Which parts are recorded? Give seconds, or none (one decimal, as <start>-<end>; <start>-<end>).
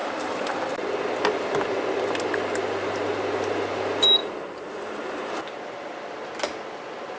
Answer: 0.0-4.2; 5.3-7.2